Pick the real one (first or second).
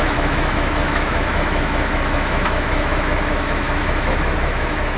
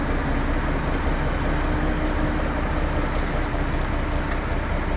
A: second